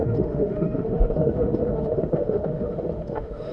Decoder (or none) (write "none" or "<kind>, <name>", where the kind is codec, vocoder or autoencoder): autoencoder, DAC-VAE